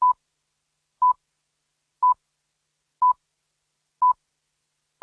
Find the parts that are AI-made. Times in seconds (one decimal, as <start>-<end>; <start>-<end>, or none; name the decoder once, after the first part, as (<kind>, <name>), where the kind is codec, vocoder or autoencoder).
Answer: none